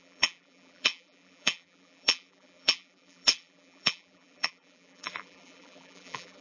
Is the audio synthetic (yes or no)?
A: yes